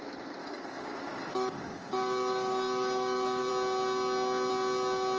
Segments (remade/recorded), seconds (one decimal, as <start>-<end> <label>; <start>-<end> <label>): 0.0-0.4 recorded; 0.4-3.5 remade; 3.5-5.2 recorded